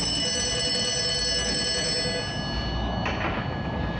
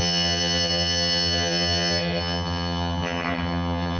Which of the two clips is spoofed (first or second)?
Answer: second